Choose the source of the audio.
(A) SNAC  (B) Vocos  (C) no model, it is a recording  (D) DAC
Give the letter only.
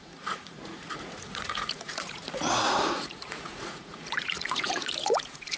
B